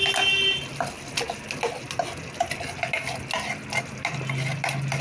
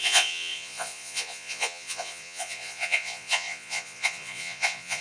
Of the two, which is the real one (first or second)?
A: first